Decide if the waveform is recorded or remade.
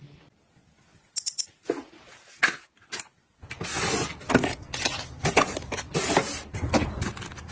recorded